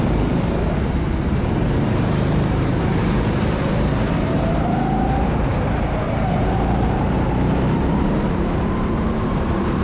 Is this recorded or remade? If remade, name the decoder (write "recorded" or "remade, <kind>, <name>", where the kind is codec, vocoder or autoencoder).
remade, vocoder, BigVGAN v2